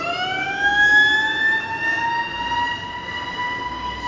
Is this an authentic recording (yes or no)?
yes